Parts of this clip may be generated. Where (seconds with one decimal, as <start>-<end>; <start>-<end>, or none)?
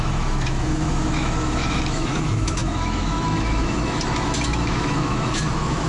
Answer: 0.0-5.9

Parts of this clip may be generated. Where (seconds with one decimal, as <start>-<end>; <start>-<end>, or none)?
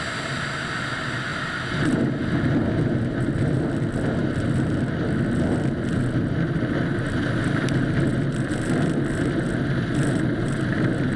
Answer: none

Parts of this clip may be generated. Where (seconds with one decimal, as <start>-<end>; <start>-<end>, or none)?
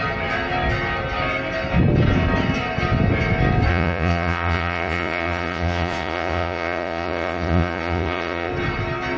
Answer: 3.7-8.5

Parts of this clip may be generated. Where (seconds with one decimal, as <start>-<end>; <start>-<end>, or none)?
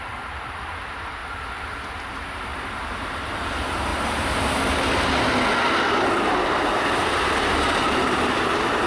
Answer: 0.0-1.2; 1.7-3.9; 6.2-8.9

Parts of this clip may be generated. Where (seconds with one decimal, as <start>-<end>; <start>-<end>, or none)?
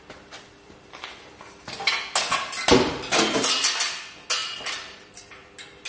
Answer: 4.4-5.5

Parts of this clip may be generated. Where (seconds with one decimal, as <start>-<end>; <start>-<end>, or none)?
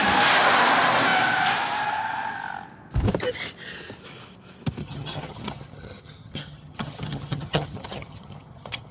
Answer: 4.8-8.9